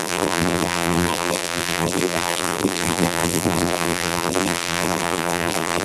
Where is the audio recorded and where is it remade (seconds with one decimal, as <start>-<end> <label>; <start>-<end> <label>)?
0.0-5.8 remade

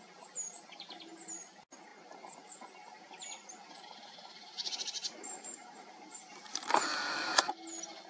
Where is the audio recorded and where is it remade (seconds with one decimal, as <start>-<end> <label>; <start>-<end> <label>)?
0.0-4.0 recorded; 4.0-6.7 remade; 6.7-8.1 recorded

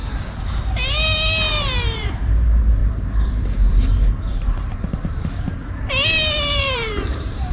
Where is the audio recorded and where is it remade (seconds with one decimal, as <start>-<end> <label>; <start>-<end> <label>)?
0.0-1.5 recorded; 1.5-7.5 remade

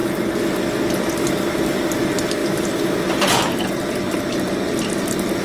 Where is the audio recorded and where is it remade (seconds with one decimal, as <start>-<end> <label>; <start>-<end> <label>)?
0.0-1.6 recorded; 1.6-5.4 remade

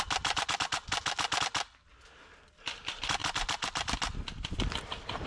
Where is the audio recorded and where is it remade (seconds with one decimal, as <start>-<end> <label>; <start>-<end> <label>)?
0.0-3.2 recorded; 3.2-4.0 remade; 4.0-5.3 recorded

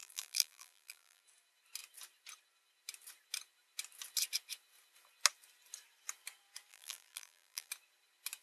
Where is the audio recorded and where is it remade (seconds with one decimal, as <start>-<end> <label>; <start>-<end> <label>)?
0.0-1.2 remade; 1.2-6.7 recorded; 6.7-7.7 remade; 7.7-8.4 recorded

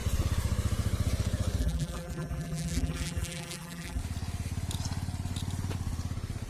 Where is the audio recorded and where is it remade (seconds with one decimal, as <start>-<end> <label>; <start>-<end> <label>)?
0.0-1.6 recorded; 1.6-4.0 remade; 4.0-6.5 recorded